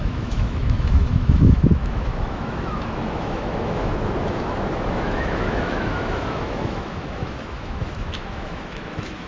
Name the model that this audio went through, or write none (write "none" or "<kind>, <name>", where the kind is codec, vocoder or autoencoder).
autoencoder, DAC-VAE